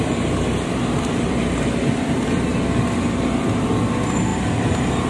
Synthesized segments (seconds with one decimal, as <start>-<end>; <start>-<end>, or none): none